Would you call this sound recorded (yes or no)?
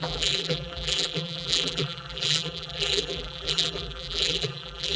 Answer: no